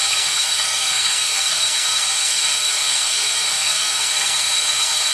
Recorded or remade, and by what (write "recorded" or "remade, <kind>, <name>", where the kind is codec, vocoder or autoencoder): remade, codec, SNAC